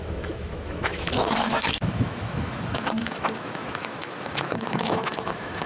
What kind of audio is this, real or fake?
fake